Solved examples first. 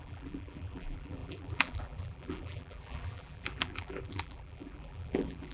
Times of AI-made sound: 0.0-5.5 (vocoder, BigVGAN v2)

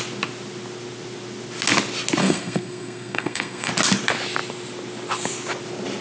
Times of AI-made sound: 2.2-3.7 (codec, SNAC)

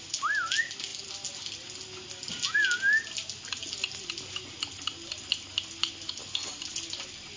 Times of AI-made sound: none

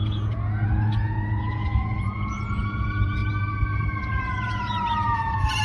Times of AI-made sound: 0.0-3.2 (vocoder, Vocos); 4.0-5.6